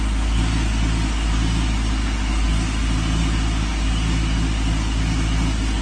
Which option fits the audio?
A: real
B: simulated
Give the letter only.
A